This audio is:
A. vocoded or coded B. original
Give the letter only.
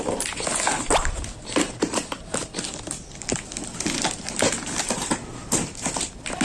B